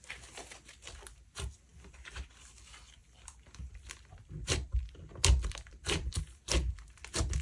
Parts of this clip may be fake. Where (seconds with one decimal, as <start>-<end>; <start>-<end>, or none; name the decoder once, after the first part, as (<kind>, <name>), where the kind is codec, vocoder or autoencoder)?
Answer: 1.7-2.3 (vocoder, BigVGAN v2); 3.0-6.2